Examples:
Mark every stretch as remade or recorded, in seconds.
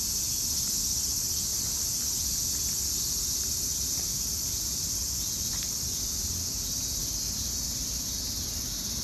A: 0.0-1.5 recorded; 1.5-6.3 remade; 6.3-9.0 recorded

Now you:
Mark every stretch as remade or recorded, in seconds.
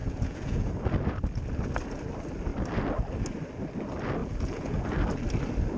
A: 0.0-0.7 remade; 0.7-4.2 recorded; 4.2-4.9 remade; 4.9-5.8 recorded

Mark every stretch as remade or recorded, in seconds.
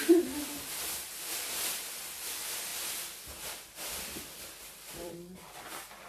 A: 0.0-2.7 remade; 2.7-4.6 recorded; 4.6-6.1 remade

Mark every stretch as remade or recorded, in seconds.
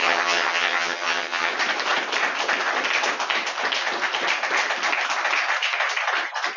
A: 0.0-1.5 remade; 1.5-6.6 recorded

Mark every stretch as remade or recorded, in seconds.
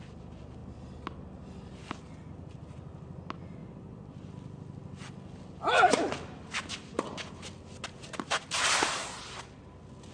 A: 0.0-10.1 recorded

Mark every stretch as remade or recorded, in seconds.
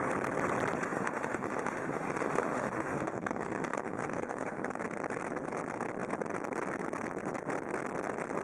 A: 0.0-0.9 recorded; 0.9-4.8 remade; 4.8-8.4 recorded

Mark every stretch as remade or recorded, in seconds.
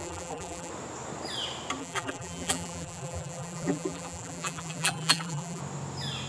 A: 0.0-0.7 remade; 0.7-1.8 recorded; 1.8-5.6 remade; 5.6-6.3 recorded